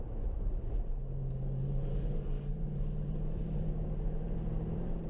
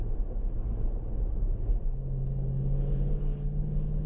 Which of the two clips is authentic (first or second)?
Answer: second